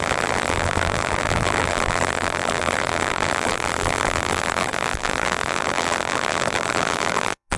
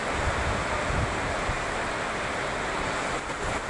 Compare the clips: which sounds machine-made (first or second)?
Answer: first